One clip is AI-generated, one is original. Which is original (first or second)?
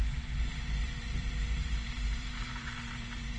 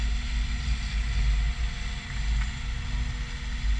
second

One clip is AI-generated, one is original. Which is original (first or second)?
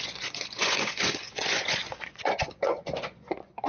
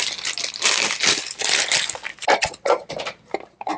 second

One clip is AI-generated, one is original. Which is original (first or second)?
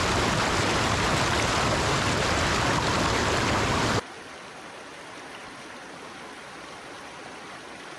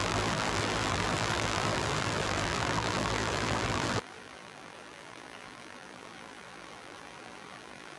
first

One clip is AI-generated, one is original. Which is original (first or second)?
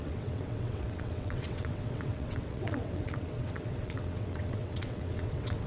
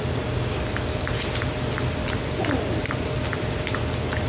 second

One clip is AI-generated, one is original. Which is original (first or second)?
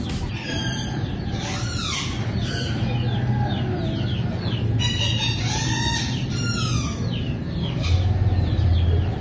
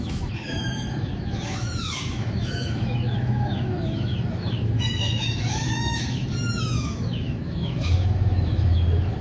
first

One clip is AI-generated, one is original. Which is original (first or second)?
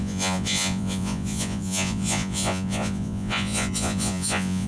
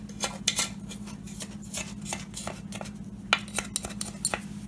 second